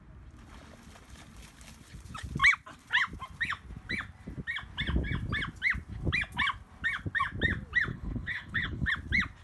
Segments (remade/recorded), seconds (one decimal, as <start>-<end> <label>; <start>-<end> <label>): 0.0-7.9 recorded; 7.9-8.9 remade; 8.9-9.4 recorded